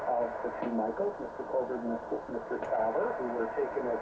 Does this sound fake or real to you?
real